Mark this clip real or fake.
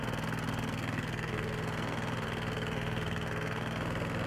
fake